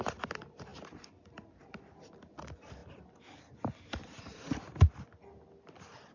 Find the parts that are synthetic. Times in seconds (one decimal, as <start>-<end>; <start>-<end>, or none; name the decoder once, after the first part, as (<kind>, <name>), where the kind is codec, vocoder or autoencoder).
none